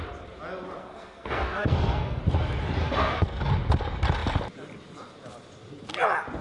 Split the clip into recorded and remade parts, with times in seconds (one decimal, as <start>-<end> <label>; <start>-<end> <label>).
0.0-0.8 recorded; 0.8-2.2 remade; 2.2-2.8 recorded; 2.8-3.5 remade; 3.5-6.4 recorded